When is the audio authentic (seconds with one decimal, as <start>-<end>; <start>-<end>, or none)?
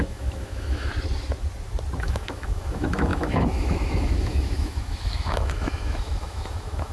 0.9-2.0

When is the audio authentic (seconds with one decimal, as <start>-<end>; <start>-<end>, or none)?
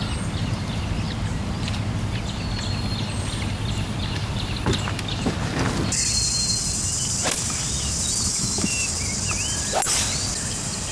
0.0-8.3; 8.9-10.9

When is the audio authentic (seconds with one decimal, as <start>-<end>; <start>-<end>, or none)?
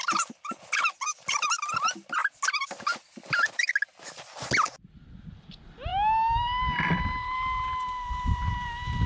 0.0-9.1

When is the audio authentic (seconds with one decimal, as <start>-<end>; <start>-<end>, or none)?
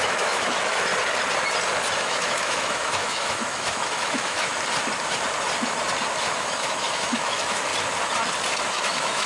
0.9-2.0; 4.5-6.2; 7.7-8.7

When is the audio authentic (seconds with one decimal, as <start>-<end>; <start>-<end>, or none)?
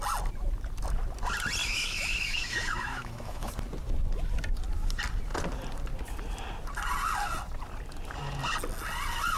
0.0-1.6; 3.5-9.4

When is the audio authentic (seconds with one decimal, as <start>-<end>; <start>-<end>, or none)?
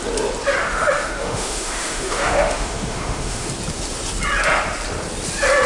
0.0-0.6; 3.5-5.7